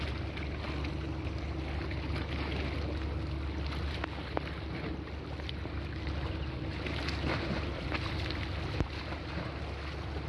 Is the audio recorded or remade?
recorded